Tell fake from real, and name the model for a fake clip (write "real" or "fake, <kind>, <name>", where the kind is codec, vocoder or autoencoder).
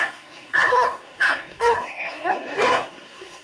fake, codec, SNAC